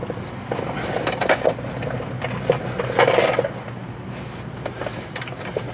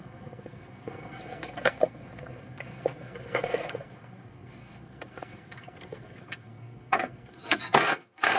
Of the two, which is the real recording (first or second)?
first